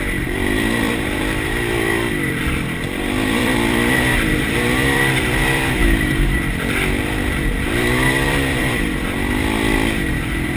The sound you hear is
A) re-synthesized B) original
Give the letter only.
A